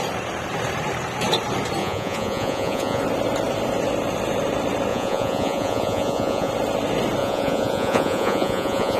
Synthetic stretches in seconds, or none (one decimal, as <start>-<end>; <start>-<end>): 1.8-3.0; 4.9-6.5; 7.2-9.0